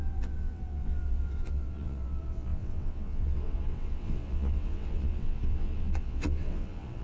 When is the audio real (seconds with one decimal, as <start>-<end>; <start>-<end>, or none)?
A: none